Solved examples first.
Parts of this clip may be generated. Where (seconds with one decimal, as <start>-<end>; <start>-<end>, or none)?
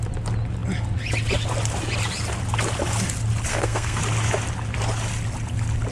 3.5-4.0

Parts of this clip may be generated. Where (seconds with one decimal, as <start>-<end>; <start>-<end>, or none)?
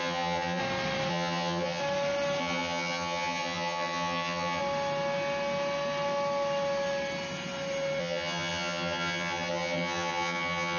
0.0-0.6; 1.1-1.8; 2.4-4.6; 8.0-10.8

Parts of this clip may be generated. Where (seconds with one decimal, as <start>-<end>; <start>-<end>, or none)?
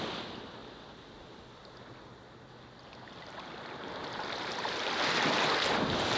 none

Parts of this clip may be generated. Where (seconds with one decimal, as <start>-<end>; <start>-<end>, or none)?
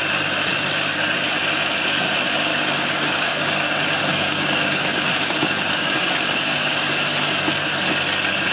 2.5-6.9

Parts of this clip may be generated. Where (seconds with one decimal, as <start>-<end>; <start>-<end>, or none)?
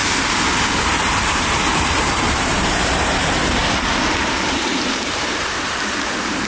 0.8-3.6; 4.2-6.5